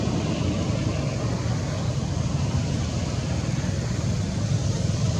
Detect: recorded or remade recorded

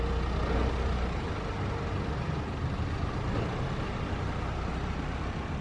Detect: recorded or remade recorded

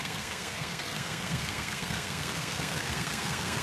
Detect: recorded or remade remade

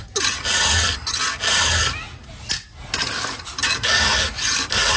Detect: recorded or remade recorded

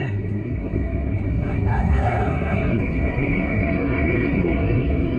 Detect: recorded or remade remade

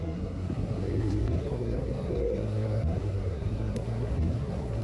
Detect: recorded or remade remade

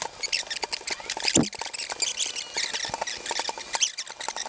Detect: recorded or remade recorded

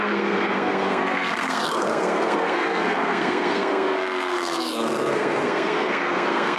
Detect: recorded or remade remade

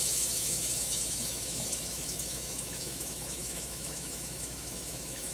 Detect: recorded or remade remade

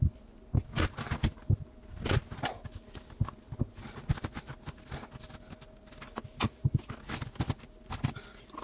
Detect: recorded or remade recorded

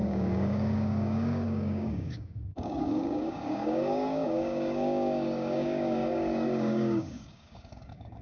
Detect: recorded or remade remade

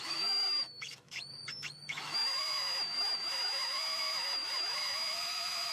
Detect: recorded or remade remade